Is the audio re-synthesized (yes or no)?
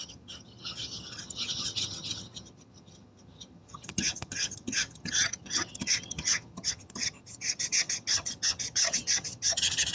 yes